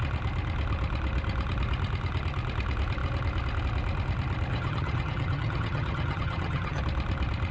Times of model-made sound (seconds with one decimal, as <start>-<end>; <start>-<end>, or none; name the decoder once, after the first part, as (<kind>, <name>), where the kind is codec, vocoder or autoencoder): 4.5-6.8 (vocoder, HiFi-GAN)